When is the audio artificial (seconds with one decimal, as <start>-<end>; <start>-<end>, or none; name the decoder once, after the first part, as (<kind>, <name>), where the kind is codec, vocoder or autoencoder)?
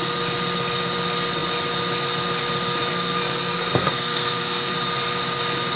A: 2.9-4.7 (codec, SNAC)